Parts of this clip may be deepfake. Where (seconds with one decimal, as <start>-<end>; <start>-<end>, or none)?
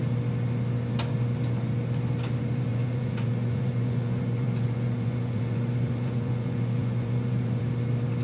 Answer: 2.7-7.6